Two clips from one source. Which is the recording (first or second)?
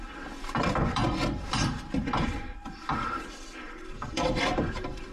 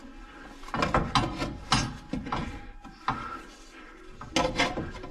second